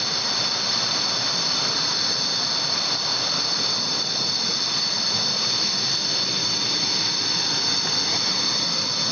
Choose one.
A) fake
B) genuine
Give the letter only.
B